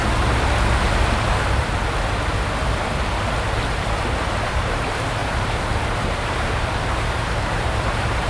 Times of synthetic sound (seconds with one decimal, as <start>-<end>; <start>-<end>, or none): 1.3-1.8; 3.7-8.3